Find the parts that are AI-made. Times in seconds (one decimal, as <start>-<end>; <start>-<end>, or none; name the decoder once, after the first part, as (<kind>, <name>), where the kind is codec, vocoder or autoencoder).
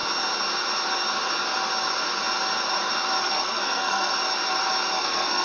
3.2-4.1 (codec, SNAC); 5.0-5.4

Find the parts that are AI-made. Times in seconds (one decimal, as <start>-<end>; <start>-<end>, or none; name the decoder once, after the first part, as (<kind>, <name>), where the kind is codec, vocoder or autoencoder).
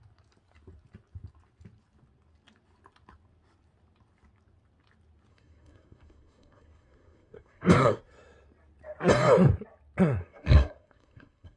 5.3-8.0 (codec, SNAC); 10.2-11.6